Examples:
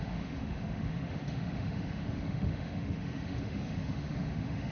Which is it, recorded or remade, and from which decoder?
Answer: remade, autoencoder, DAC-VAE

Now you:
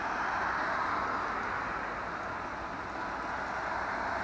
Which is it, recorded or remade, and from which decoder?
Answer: recorded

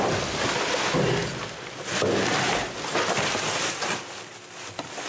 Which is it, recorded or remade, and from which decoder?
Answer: recorded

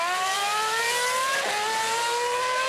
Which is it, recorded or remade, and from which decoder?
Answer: recorded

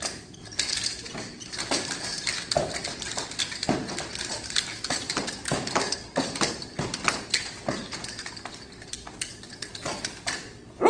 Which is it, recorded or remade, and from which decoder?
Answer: recorded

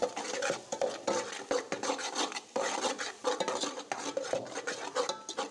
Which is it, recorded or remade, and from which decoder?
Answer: recorded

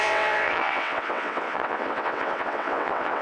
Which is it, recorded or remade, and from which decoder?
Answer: remade, vocoder, WaveNeXt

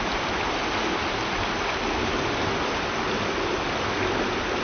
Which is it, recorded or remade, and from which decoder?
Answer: recorded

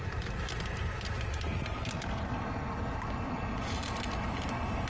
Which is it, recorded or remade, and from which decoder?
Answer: recorded